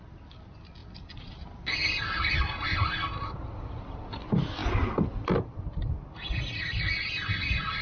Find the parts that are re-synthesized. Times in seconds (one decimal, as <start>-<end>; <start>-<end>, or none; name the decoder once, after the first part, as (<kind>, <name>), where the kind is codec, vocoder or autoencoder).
0.8-2.2 (vocoder, BigVGAN v2)